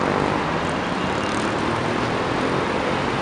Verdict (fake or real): real